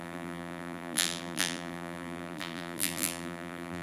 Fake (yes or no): yes